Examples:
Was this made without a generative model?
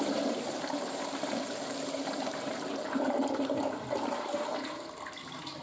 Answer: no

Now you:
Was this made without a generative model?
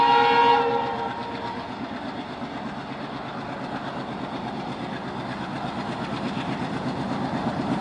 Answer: yes